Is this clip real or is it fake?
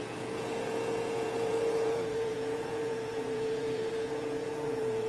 fake